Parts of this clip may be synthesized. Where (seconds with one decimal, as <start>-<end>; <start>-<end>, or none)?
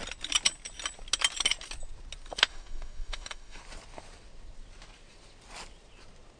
2.5-3.6